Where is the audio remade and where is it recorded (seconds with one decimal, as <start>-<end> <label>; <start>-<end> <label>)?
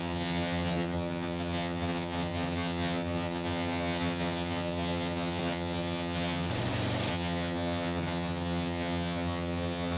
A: 0.0-6.5 remade; 6.5-7.1 recorded; 7.1-10.0 remade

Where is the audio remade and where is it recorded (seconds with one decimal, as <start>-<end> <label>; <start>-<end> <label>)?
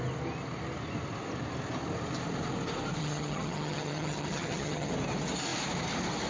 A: 0.0-3.0 recorded; 3.0-4.9 remade; 4.9-6.3 recorded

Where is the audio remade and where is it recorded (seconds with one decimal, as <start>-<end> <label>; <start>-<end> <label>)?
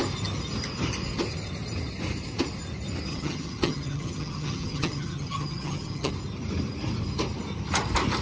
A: 0.0-3.1 recorded; 3.1-6.1 remade; 6.1-8.2 recorded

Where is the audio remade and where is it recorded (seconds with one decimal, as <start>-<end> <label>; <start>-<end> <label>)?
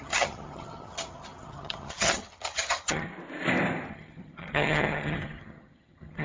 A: 0.0-3.1 remade; 3.1-3.9 recorded; 3.9-6.2 remade